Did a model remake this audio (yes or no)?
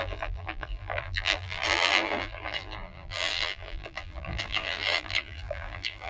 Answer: yes